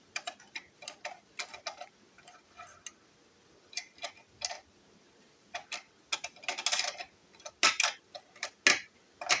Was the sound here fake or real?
real